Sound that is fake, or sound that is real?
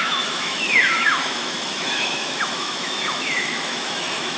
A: fake